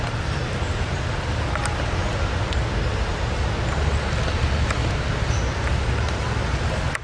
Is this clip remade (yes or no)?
no